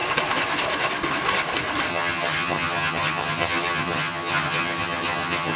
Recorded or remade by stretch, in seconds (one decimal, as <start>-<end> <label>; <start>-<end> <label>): 0.0-1.9 recorded; 1.9-5.6 remade